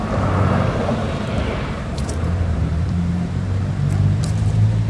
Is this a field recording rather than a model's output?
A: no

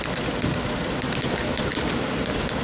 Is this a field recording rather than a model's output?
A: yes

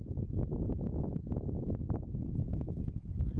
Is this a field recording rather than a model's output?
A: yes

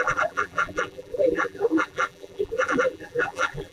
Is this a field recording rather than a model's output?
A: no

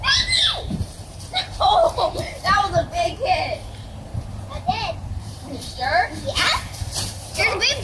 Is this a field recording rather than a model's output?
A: no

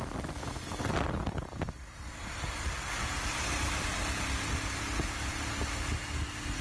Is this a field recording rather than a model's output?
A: yes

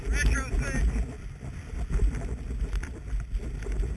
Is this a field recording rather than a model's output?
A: yes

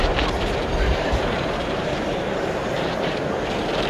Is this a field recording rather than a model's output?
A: no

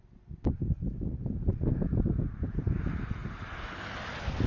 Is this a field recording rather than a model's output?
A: yes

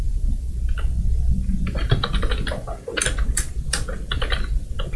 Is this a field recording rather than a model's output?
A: yes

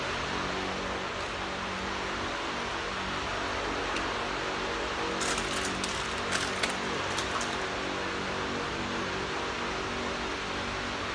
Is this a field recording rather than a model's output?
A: yes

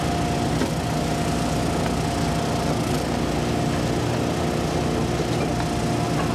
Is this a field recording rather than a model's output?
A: yes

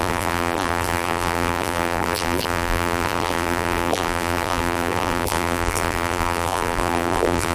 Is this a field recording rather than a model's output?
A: no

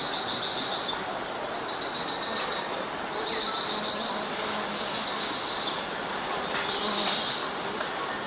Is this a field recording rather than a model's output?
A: yes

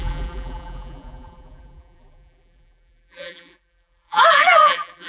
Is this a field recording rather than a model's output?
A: no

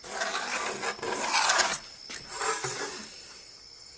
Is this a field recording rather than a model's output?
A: yes